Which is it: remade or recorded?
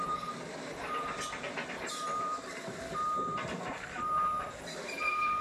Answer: remade